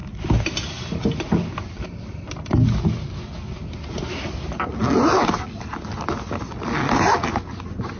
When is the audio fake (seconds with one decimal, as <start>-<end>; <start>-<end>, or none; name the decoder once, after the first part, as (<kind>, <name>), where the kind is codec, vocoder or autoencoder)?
none